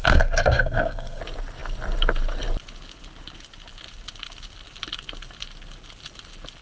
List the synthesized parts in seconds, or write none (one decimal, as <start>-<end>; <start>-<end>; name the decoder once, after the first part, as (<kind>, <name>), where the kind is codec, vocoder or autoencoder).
0.0-1.2 (codec, SNAC)